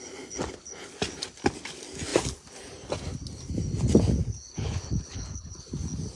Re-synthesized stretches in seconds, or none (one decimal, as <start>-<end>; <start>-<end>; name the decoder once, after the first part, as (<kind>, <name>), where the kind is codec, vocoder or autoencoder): 4.5-5.6 (codec, HILCodec)